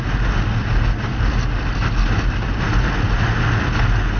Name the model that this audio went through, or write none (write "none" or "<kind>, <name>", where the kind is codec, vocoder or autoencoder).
none